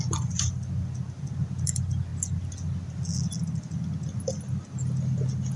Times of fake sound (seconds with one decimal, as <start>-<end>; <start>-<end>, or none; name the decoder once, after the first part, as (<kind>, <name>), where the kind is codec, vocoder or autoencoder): none